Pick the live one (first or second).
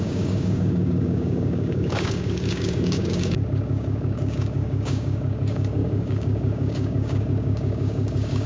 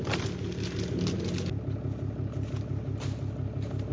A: second